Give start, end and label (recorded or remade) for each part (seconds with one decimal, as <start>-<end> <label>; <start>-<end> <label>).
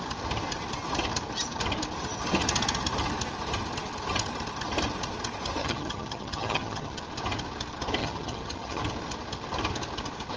0.0-5.6 recorded; 5.6-7.0 remade; 7.0-8.0 recorded; 8.0-8.8 remade; 8.8-10.4 recorded